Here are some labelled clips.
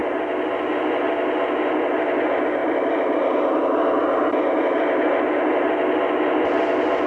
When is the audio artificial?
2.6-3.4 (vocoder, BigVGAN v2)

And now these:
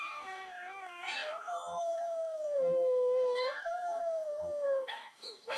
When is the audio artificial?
0.0-5.6 (codec, DAC)

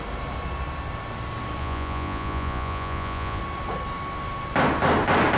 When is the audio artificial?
1.6-3.4 (vocoder, Vocos)

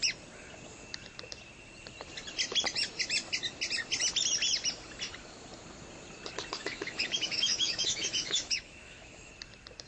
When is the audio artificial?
6.6-9.3 (autoencoder, DAC-VAE)

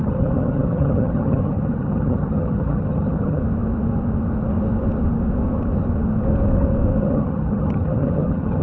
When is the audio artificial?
0.0-3.4 (vocoder, HiFi-GAN); 7.0-8.6